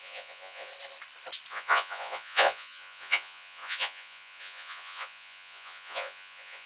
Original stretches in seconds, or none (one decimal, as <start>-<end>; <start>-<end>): 0.7-1.5